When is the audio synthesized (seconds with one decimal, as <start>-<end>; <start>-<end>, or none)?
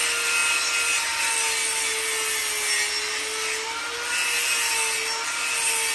none